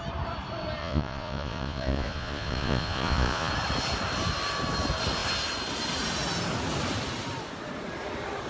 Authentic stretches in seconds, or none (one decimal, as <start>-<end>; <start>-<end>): 0.0-0.8; 3.5-8.5